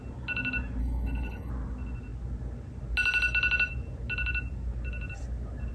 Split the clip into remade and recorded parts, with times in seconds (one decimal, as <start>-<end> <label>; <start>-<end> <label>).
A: 0.0-0.8 recorded; 0.8-1.5 remade; 1.5-5.7 recorded